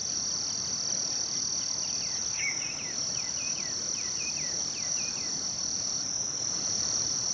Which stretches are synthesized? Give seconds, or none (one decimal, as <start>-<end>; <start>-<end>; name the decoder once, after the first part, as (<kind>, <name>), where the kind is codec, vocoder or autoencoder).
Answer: none